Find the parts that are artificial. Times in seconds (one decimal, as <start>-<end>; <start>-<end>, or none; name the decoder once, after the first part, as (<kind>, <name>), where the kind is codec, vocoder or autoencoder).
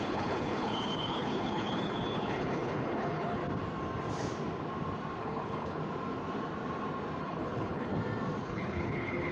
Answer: 0.0-3.4 (codec, HILCodec); 5.2-5.8; 7.2-7.9; 8.4-9.3